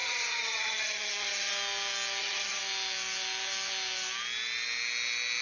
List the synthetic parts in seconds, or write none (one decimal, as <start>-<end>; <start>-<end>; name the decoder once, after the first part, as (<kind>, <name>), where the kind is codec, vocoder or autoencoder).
0.0-1.5 (vocoder, HiFi-GAN); 2.2-2.6